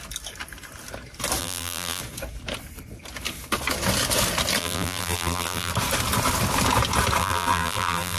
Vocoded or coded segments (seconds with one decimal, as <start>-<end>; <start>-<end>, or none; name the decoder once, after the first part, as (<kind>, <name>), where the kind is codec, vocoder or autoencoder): 1.4-2.0 (vocoder, BigVGAN v2); 4.6-5.7; 7.2-8.2